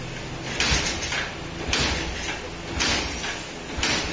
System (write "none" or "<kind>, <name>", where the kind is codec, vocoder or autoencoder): none